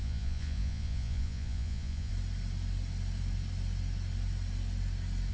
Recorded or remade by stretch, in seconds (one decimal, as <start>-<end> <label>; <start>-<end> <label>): 0.0-2.1 remade; 2.1-5.3 recorded